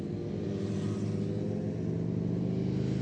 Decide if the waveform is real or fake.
real